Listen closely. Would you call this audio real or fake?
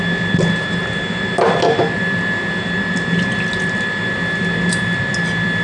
real